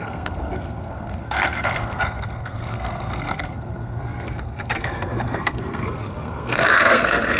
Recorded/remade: remade